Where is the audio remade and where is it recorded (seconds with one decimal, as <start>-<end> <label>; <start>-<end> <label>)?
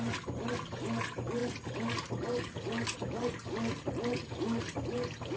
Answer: 0.0-5.4 recorded